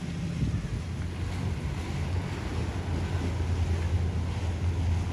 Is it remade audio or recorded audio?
recorded